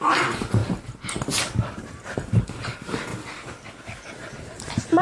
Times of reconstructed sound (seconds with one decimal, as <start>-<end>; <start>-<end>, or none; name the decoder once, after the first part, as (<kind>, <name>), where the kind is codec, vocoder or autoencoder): 0.0-0.6 (vocoder, BigVGAN v2); 1.7-3.1; 4.0-5.0